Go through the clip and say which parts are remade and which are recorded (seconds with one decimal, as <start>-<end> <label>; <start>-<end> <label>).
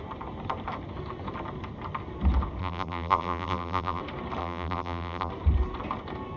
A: 0.0-2.6 recorded; 2.6-4.0 remade; 4.0-4.4 recorded; 4.4-5.3 remade; 5.3-6.4 recorded